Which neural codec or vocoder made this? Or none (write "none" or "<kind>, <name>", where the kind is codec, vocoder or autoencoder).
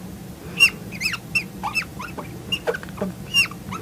none